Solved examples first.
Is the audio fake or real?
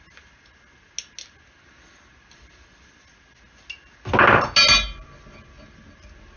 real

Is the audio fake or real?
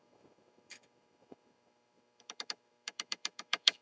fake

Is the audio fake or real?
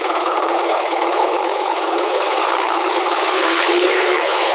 fake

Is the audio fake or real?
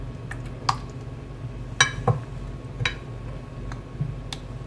real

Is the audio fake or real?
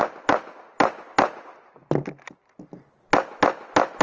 real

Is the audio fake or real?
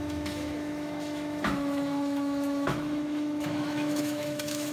fake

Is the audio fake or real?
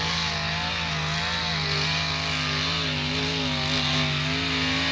real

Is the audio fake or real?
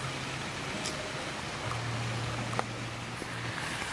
real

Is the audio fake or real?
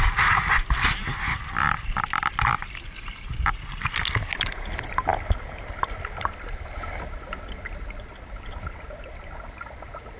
real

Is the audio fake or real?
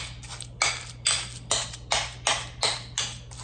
real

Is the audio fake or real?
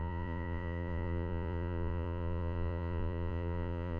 fake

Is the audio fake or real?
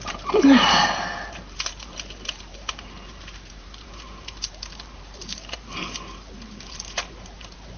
fake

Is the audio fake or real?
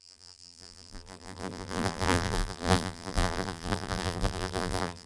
fake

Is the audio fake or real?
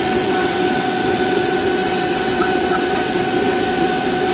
fake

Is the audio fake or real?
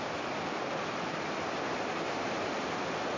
real